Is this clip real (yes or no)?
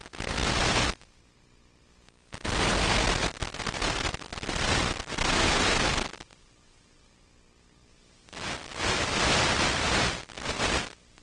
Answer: yes